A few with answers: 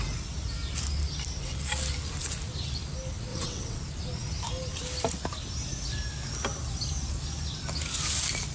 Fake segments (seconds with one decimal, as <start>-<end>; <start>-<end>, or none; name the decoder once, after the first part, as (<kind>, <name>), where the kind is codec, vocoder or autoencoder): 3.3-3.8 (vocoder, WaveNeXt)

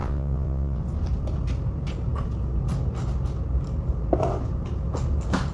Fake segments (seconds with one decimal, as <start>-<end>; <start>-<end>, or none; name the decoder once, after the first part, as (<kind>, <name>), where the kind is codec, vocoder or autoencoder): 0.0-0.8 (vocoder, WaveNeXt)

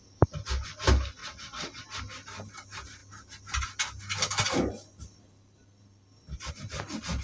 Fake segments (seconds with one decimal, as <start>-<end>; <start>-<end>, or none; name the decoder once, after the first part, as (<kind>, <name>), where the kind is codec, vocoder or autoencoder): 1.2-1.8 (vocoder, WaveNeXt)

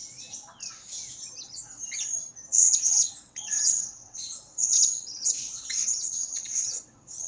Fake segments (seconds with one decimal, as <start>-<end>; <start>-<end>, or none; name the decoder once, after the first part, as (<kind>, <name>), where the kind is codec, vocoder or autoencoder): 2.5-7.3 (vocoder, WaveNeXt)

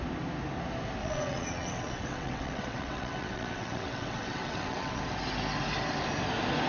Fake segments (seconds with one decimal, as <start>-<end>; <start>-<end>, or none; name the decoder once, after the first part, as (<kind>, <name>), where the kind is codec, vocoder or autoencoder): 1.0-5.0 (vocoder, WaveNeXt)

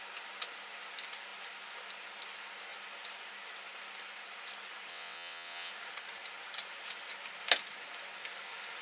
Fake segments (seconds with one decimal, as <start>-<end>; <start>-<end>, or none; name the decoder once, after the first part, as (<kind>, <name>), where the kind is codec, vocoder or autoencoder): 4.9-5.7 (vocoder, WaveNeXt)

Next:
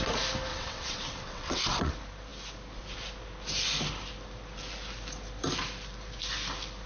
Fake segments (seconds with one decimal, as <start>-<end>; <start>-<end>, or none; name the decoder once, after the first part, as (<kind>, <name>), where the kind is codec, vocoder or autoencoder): 0.5-1.9 (vocoder, WaveNeXt)